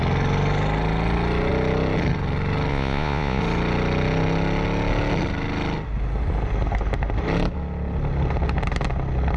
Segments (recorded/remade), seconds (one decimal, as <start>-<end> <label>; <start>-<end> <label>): 0.0-2.7 recorded; 2.7-3.4 remade; 3.4-9.4 recorded